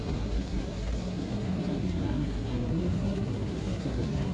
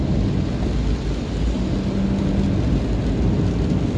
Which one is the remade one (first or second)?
first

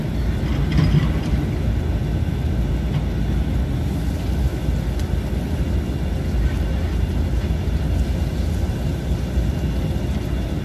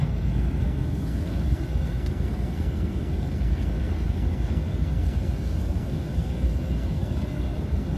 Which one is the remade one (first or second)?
second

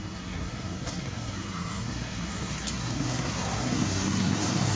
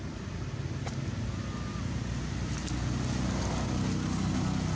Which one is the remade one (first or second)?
first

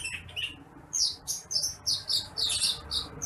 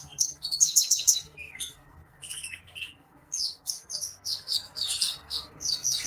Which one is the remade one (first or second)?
second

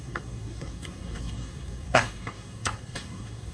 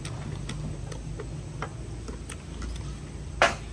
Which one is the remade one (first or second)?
first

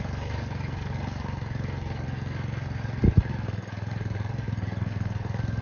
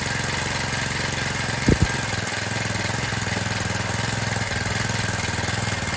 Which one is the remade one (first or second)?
first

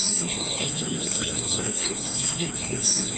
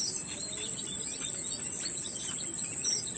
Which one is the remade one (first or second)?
first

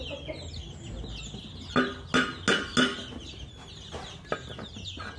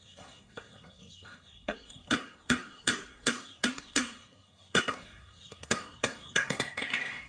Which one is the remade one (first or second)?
second